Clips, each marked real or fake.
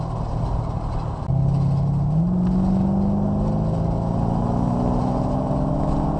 real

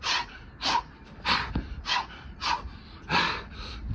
real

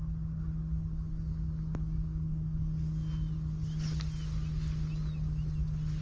real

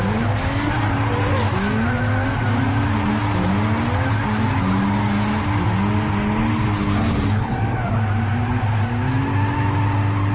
real